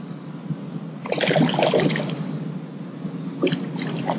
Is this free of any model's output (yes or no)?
yes